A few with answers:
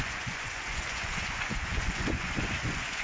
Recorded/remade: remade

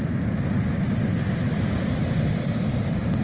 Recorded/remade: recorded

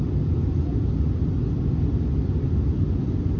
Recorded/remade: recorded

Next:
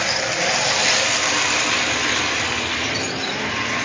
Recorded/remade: recorded